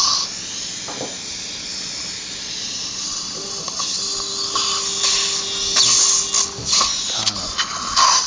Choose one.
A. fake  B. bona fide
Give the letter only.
B